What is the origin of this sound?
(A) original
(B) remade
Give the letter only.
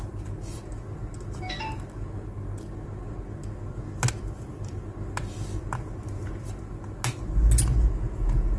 A